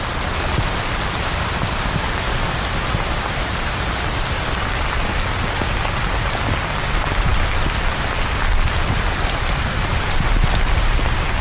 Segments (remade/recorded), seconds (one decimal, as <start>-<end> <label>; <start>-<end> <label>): 0.0-11.4 recorded